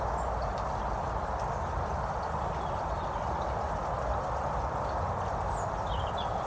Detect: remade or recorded recorded